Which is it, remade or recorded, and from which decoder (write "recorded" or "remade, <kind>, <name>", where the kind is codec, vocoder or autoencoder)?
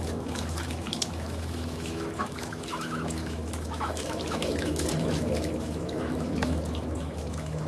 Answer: remade, autoencoder, DAC-VAE